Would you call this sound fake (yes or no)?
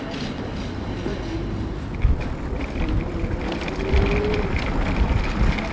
no